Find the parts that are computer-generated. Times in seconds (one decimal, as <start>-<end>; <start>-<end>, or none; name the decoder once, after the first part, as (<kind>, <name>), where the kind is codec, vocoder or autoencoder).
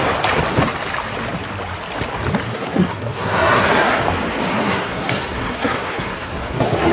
2.5-4.0 (codec, SNAC); 4.5-6.9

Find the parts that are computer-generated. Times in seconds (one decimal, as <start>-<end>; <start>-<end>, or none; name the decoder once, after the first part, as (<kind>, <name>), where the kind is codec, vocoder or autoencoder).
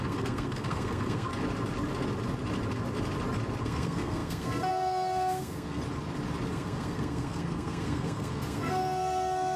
0.0-1.3 (codec, SNAC); 3.6-5.8; 6.5-9.6